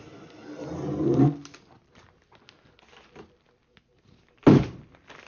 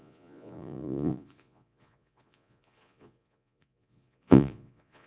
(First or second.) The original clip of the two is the first